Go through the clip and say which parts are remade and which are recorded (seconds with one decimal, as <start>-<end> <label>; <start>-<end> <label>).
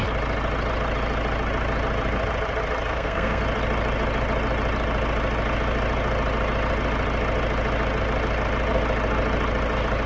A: 0.0-2.9 recorded; 2.9-3.4 remade; 3.4-10.1 recorded